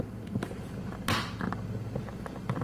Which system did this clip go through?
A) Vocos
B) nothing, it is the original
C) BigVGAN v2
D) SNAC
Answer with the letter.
B